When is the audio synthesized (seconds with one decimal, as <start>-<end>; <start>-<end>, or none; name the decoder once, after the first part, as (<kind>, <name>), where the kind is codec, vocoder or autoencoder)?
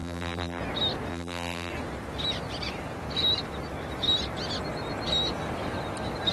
0.0-0.6 (vocoder, BigVGAN v2); 1.1-1.7